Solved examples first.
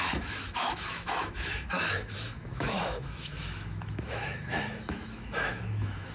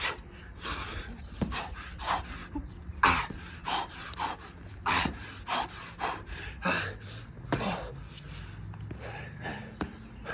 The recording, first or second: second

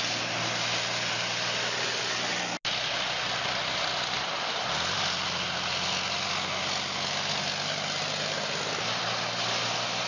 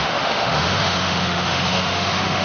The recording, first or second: first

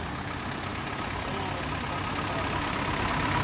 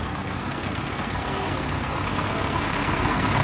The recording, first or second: first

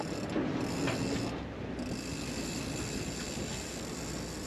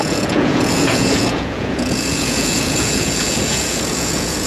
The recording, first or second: first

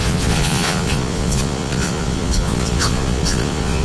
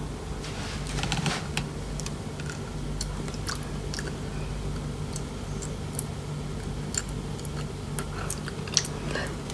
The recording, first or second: second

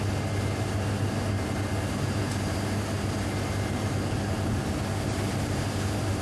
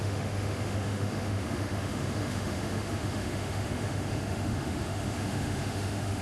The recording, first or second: first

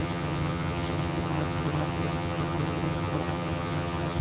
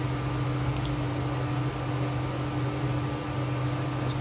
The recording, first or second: second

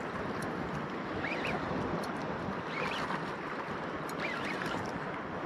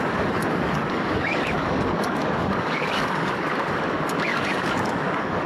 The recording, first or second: first